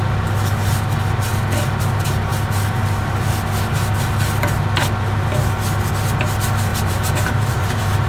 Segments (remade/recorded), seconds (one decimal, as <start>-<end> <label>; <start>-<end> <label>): 0.0-6.7 recorded; 6.7-8.1 remade